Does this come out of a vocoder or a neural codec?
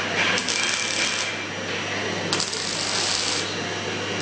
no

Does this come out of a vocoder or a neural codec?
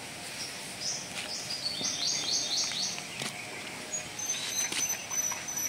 no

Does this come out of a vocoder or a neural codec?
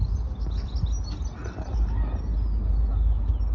no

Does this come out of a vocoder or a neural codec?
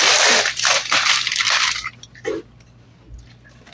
no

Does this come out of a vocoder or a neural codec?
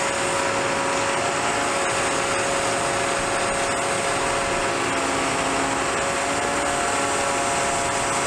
no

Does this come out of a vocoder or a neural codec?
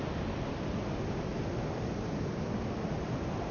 no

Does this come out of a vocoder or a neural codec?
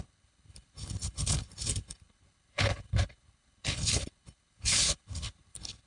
yes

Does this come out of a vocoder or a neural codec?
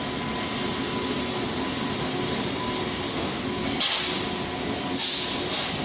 no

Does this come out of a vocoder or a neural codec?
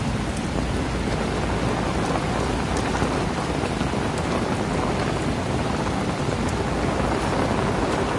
no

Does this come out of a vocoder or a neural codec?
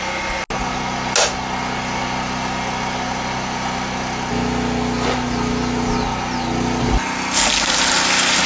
no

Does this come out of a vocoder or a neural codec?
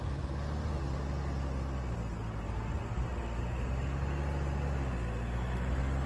no